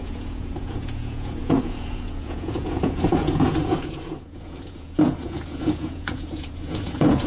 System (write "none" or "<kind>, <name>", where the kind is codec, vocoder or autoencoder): vocoder, Vocos